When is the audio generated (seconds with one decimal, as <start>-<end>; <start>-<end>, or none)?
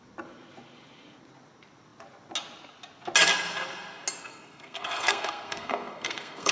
4.2-6.5